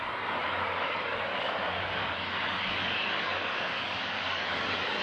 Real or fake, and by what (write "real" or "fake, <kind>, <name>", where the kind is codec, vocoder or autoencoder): fake, codec, DAC